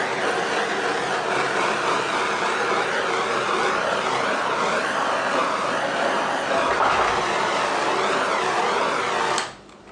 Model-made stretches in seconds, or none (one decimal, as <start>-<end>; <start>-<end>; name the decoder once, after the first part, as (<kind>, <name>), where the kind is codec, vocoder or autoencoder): 0.0-2.2 (vocoder, BigVGAN v2); 3.2-9.9